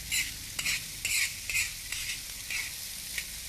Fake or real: real